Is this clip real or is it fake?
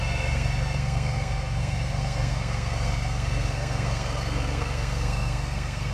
fake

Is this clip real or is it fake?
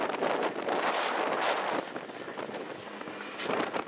real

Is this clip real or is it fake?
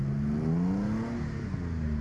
real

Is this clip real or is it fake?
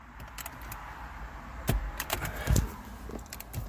real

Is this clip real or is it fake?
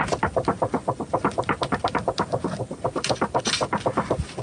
real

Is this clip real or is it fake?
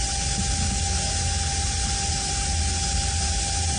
real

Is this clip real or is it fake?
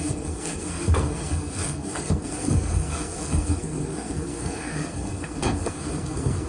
fake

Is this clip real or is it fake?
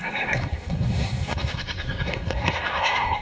fake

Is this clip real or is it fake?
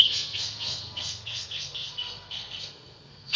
fake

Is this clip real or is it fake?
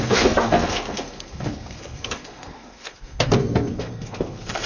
fake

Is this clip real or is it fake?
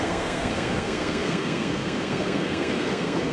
fake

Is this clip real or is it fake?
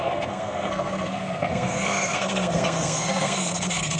fake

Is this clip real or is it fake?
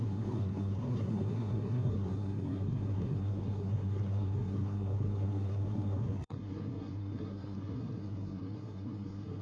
fake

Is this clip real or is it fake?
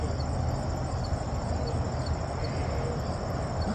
real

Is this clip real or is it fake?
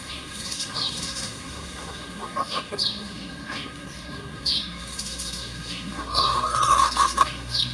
fake